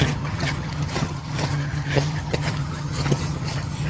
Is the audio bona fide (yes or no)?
no